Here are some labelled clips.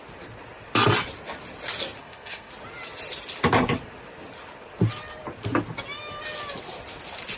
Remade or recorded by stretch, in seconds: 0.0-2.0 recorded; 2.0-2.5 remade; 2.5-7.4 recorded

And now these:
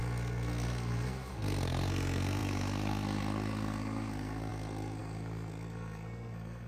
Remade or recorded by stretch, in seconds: 0.0-6.7 remade

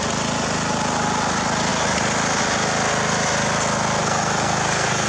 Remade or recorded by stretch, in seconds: 0.0-4.0 recorded; 4.0-5.1 remade

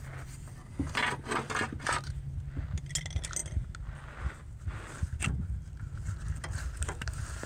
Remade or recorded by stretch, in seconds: 0.0-7.5 recorded